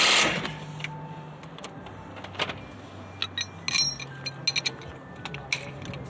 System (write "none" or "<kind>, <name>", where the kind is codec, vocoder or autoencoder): none